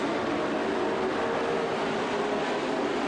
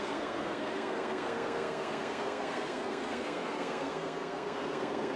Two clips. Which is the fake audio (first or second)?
second